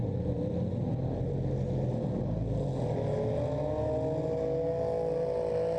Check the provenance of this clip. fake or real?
real